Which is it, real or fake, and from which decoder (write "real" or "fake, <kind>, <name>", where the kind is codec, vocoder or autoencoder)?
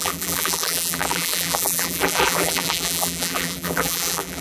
fake, vocoder, BigVGAN v2